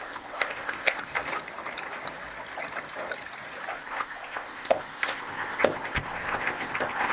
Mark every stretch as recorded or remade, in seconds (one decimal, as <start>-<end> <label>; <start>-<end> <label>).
0.0-1.1 remade; 1.1-3.7 recorded; 3.7-7.1 remade